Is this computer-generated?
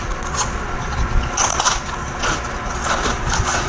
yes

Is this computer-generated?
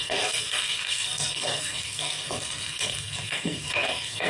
yes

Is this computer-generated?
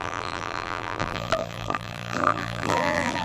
yes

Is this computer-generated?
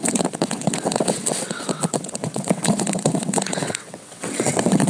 yes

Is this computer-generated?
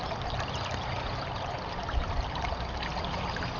no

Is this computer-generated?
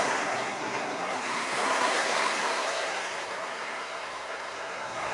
yes